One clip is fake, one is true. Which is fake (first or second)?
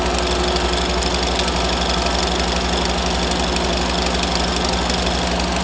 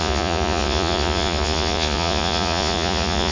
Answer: second